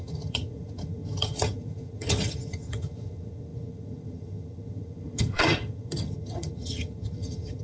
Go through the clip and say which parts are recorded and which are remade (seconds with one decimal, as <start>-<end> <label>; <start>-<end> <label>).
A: 0.0-7.6 remade